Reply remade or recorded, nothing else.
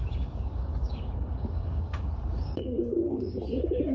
remade